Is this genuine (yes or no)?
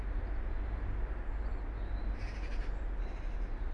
yes